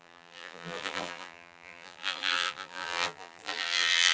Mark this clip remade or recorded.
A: remade